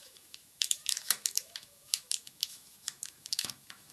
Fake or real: fake